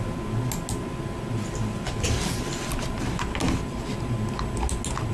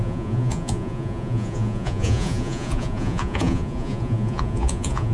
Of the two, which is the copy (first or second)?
second